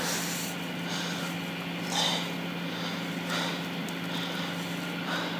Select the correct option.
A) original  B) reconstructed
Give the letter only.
A